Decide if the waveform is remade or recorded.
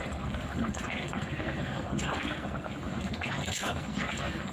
remade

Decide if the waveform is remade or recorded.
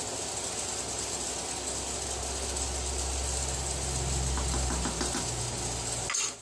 recorded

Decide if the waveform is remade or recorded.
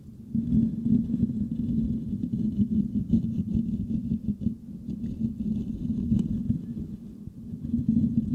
recorded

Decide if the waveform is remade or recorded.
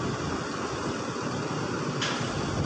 recorded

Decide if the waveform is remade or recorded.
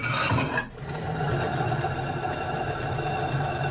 recorded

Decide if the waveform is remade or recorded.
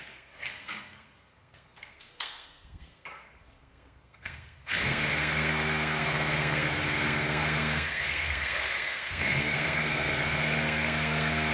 remade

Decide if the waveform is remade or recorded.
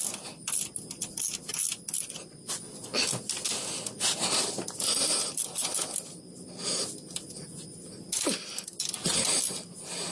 recorded